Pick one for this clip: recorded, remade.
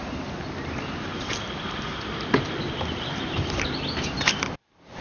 remade